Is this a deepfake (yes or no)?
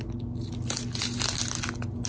no